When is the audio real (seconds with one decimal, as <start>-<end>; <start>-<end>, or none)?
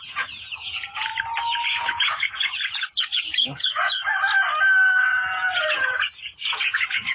1.1-1.6; 4.0-4.9